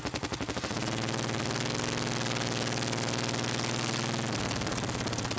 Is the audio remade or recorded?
recorded